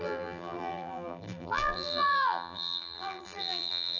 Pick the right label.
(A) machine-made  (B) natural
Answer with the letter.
A